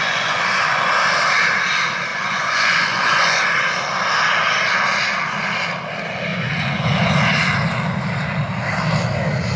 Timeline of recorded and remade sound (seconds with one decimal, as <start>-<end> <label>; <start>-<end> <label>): 0.0-0.9 remade; 0.9-2.1 recorded; 2.1-3.4 remade; 3.4-6.3 recorded; 6.3-7.0 remade; 7.0-9.6 recorded